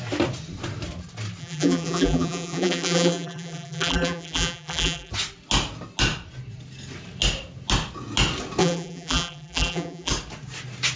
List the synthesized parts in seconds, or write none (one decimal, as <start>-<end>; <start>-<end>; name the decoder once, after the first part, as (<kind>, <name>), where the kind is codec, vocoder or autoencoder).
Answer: 1.4-5.1 (vocoder, BigVGAN v2); 8.6-10.1